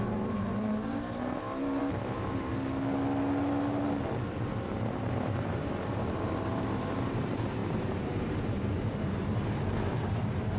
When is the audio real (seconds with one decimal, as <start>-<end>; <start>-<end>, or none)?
2.5-4.7